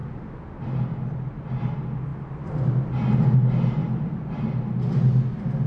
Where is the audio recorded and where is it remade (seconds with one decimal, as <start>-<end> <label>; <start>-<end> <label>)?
0.0-1.7 remade; 1.7-2.1 recorded; 2.1-2.7 remade; 2.7-3.8 recorded; 3.8-5.7 remade